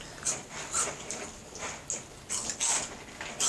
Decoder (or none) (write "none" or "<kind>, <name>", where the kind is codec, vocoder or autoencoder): none